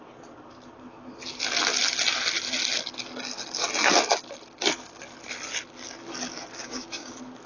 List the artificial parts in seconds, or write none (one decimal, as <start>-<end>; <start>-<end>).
6.6-7.1